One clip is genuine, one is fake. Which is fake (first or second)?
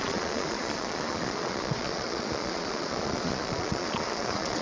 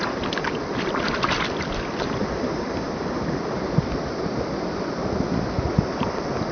first